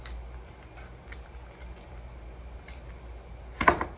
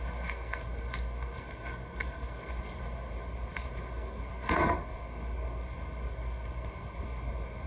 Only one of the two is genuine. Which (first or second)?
first